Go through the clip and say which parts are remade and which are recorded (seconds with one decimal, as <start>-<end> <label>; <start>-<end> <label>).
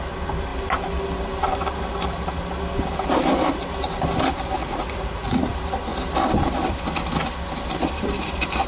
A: 0.0-4.6 recorded; 4.6-5.5 remade; 5.5-8.7 recorded